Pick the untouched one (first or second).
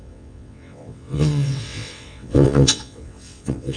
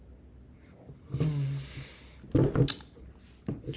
second